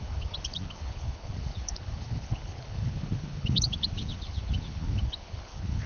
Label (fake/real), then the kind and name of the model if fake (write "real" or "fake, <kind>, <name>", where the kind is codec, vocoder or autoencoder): fake, codec, HILCodec